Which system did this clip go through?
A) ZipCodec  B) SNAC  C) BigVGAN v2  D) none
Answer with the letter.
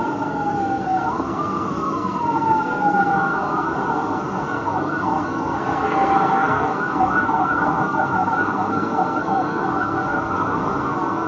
B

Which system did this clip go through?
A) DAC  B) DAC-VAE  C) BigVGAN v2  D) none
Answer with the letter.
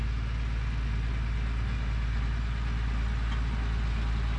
D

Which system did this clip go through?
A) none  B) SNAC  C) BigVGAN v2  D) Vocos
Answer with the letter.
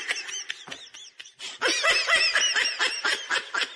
A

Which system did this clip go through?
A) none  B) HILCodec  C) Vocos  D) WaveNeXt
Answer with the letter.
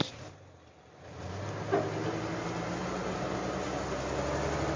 A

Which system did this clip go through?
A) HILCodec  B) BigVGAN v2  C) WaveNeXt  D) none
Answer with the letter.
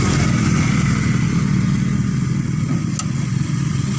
D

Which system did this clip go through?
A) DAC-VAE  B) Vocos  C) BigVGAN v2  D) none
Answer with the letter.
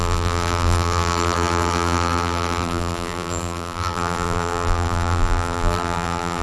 C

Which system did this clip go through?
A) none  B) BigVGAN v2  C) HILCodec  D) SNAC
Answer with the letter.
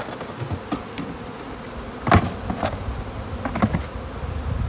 A